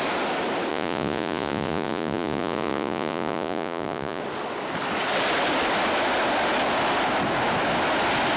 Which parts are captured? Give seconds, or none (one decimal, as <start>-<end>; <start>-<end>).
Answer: 0.0-0.7; 4.2-8.4